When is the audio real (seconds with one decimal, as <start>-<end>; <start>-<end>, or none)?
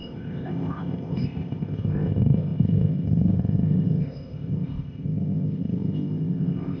none